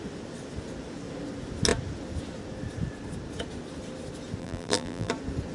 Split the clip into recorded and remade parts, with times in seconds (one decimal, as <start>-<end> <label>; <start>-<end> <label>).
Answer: 0.0-4.4 recorded; 4.4-5.1 remade; 5.1-5.5 recorded

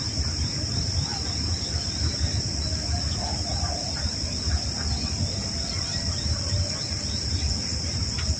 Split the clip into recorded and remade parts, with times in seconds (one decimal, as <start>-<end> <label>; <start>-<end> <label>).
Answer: 0.0-5.9 remade; 5.9-6.9 recorded; 6.9-8.4 remade

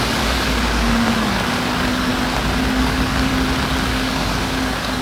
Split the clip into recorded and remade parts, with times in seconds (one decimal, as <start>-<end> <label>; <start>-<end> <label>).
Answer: 0.0-2.1 remade; 2.1-2.6 recorded; 2.6-3.3 remade; 3.3-3.9 recorded; 3.9-5.0 remade

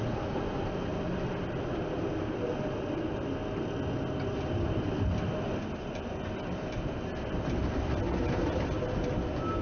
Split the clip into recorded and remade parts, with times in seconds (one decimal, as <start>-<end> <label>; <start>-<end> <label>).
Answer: 0.0-0.9 recorded; 0.9-1.8 remade; 1.8-9.6 recorded

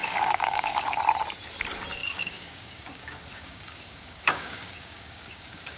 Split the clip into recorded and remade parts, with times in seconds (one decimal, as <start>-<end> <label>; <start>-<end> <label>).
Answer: 0.0-1.0 remade; 1.0-2.0 recorded; 2.0-5.8 remade

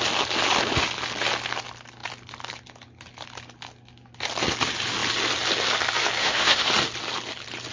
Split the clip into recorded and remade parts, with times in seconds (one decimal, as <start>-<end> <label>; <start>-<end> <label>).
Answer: 0.0-6.2 recorded; 6.2-6.7 remade; 6.7-7.7 recorded

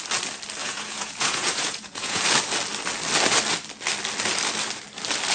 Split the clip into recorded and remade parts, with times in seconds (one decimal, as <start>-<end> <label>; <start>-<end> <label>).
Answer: 0.0-0.6 recorded; 0.6-2.2 remade; 2.2-5.3 recorded